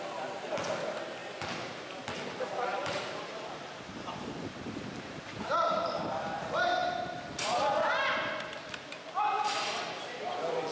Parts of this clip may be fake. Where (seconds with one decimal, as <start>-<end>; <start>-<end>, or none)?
1.2-1.9; 2.7-5.4